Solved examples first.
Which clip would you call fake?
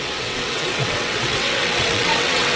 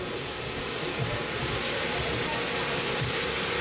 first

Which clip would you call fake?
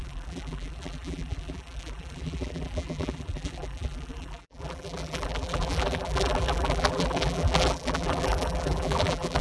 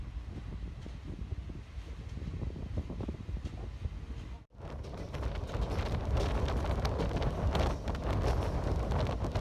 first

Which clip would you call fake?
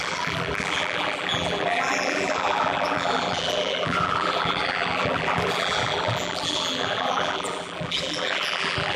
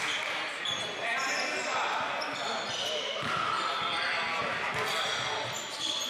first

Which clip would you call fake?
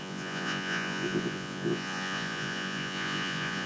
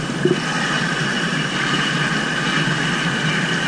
first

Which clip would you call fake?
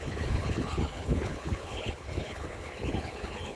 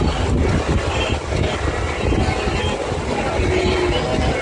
first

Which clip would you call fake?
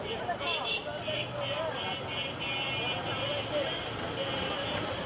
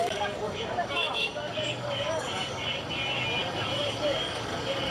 second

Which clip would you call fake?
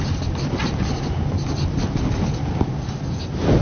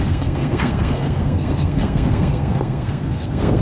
second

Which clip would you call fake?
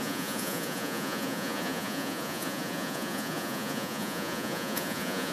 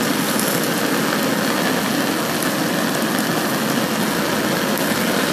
first